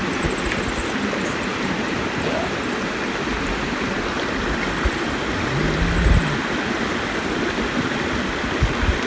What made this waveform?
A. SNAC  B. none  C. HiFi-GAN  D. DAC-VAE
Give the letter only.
B